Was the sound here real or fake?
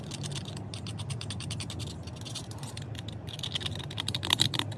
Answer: real